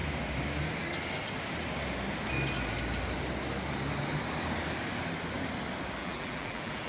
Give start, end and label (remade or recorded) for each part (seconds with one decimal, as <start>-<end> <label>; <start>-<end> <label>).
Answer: 0.0-6.0 recorded; 6.0-6.9 remade